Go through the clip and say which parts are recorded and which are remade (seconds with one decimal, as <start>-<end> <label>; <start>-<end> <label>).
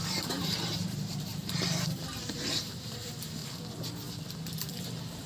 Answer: 0.0-3.4 remade; 3.4-4.8 recorded; 4.8-5.3 remade